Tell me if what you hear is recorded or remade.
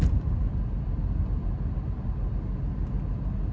recorded